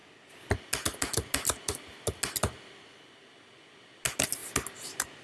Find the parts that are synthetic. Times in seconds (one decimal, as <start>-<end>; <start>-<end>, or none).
none